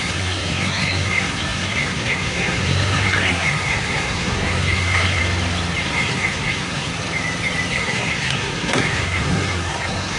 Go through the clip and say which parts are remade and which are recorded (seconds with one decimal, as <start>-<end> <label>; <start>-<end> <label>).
0.0-5.2 remade; 5.2-5.8 recorded; 5.8-6.9 remade; 6.9-7.7 recorded; 7.7-10.2 remade